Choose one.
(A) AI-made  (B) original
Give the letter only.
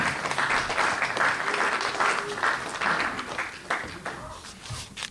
B